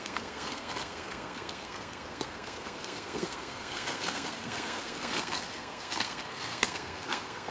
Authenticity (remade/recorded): remade